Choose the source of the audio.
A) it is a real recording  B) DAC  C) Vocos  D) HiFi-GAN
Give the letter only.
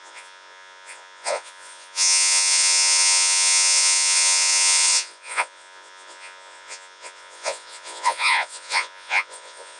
C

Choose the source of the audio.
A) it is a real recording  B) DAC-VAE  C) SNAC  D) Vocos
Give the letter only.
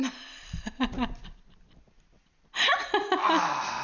A